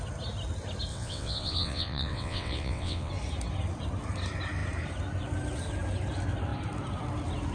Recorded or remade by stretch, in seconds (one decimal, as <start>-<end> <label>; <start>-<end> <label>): 0.0-0.9 recorded; 0.9-3.1 remade; 3.1-7.5 recorded